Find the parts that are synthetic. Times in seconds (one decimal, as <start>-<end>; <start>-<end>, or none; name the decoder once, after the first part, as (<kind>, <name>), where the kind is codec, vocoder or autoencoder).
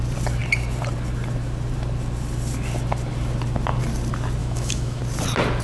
4.4-5.0 (autoencoder, DAC-VAE)